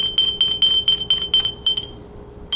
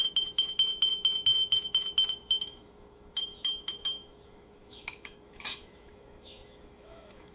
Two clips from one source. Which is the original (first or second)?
first